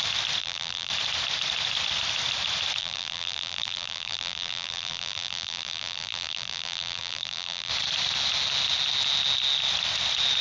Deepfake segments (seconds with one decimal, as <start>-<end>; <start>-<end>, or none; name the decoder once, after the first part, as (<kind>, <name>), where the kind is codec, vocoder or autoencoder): 0.4-0.9 (vocoder, BigVGAN v2); 2.8-7.7